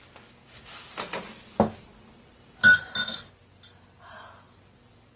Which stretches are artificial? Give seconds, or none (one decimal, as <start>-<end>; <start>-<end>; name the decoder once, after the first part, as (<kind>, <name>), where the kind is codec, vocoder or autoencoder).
none